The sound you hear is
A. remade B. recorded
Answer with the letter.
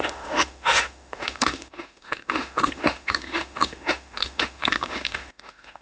A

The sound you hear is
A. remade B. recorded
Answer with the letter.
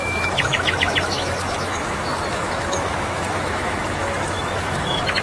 A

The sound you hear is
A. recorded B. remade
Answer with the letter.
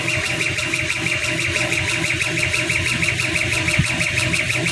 A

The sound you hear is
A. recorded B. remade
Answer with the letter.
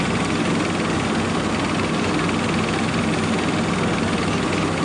A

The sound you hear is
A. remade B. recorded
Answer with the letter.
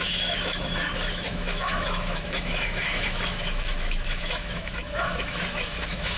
A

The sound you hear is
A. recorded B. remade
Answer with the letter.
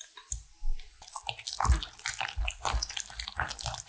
A